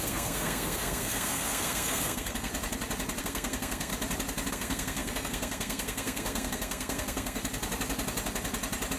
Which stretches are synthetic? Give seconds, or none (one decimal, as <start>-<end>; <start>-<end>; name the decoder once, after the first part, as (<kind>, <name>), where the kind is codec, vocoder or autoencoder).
0.0-2.5 (codec, SNAC); 3.2-3.9; 4.5-7.4